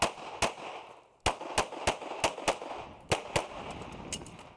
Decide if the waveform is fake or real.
real